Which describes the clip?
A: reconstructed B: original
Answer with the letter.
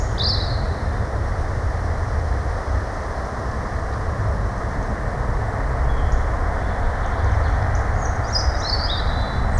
B